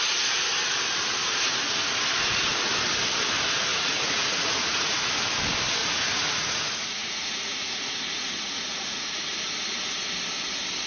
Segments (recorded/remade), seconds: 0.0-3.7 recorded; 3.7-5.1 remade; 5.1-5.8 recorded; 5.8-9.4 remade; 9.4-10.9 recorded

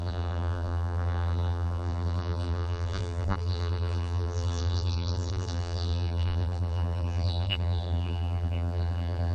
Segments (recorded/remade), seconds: 0.0-9.3 remade

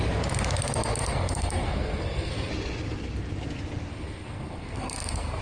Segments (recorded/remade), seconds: 0.0-1.0 recorded; 1.0-2.5 remade; 2.5-3.9 recorded; 3.9-5.4 remade

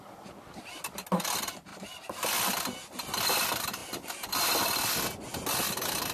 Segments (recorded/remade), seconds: 0.0-6.1 recorded

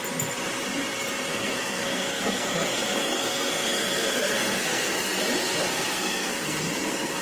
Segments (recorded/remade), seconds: 0.0-1.3 recorded; 1.3-5.2 remade; 5.2-5.7 recorded; 5.7-7.2 remade

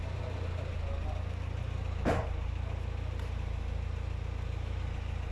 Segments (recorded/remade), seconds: 0.0-5.3 recorded